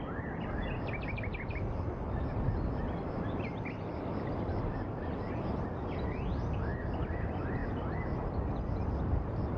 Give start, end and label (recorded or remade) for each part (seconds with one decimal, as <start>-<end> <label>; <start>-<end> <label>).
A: 0.0-9.6 recorded